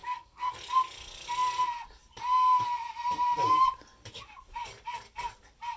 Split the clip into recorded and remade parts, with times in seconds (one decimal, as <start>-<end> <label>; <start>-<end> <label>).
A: 0.0-0.5 remade; 0.5-5.8 recorded